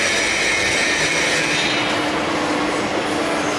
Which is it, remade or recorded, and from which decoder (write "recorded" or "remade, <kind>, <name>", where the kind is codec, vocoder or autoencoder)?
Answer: recorded